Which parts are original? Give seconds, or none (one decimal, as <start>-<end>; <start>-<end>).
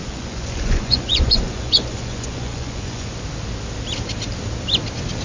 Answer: 3.1-5.2